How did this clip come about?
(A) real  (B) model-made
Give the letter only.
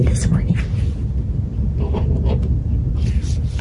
A